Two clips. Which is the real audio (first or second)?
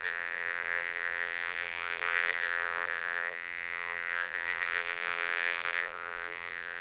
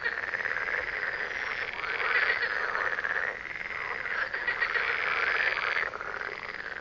second